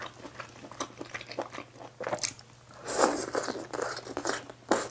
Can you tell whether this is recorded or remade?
recorded